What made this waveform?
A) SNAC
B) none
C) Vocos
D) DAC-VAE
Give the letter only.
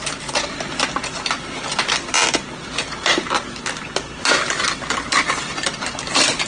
B